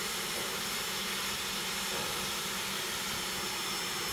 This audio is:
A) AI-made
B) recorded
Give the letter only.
B